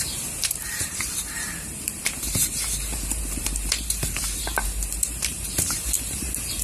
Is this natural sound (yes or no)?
no